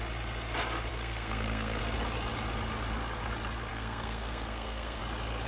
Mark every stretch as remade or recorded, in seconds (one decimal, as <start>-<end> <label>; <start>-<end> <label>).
0.0-0.9 recorded; 0.9-1.8 remade; 1.8-3.7 recorded; 3.7-5.0 remade; 5.0-5.5 recorded